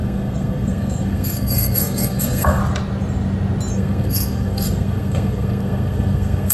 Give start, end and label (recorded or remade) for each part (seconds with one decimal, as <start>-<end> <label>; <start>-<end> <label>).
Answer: 0.0-2.6 remade; 2.6-3.7 recorded; 3.7-6.5 remade